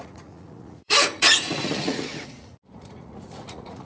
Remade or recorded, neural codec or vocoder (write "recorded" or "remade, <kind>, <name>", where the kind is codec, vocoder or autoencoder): remade, vocoder, Vocos